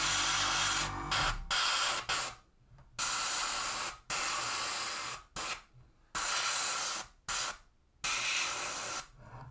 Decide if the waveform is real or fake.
real